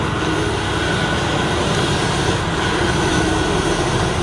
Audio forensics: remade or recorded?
recorded